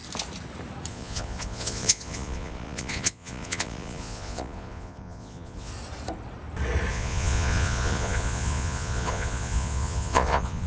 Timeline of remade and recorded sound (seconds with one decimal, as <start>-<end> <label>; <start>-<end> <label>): 0.0-0.9 recorded; 0.9-5.7 remade; 5.7-6.9 recorded; 6.9-10.7 remade